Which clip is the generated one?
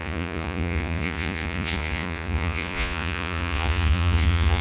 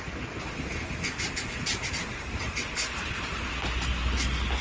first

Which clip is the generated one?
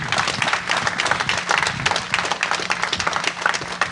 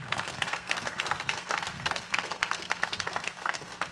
second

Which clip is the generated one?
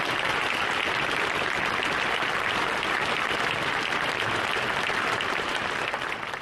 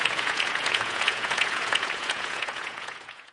second